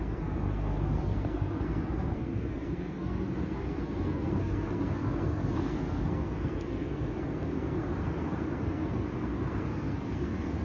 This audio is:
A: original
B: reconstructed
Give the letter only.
B